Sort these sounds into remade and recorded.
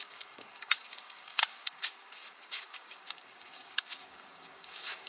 remade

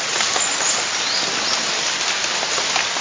recorded